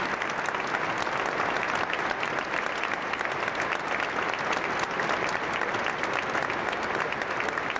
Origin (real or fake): real